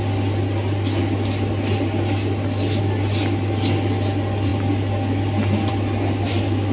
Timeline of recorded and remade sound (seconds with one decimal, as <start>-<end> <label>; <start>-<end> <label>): 0.0-6.7 recorded